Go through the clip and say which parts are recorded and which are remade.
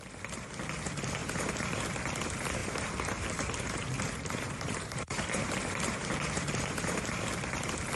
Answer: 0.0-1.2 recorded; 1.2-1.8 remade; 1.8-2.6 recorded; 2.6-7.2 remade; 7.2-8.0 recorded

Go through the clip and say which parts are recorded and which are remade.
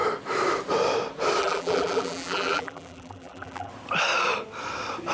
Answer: 0.0-1.4 recorded; 1.4-3.7 remade; 3.7-5.1 recorded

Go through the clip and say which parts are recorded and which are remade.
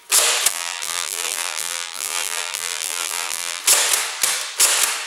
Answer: 0.0-0.5 recorded; 0.5-3.6 remade; 3.6-5.1 recorded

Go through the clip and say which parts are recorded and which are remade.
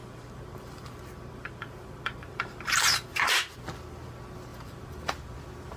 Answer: 0.0-3.5 remade; 3.5-4.5 recorded; 4.5-5.1 remade; 5.1-5.8 recorded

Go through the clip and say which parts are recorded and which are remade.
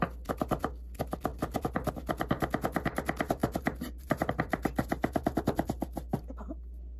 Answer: 0.0-3.4 recorded; 3.4-5.4 remade; 5.4-7.0 recorded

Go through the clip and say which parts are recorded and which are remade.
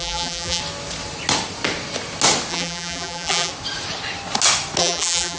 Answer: 0.0-0.6 remade; 0.6-2.5 recorded; 2.5-3.5 remade; 3.5-4.8 recorded; 4.8-5.4 remade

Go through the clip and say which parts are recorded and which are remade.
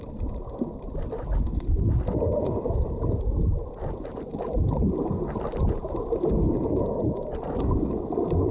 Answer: 0.0-8.5 recorded